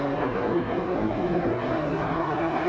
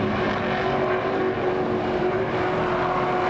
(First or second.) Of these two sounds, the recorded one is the second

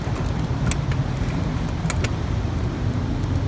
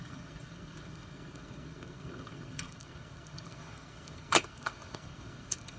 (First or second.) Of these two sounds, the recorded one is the first